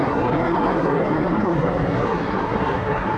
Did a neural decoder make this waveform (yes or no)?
yes